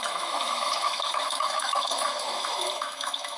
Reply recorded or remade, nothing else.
remade